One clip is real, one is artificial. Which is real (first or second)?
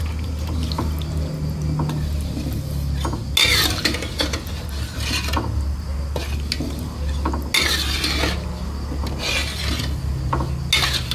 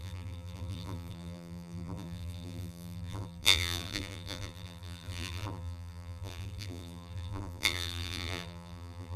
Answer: first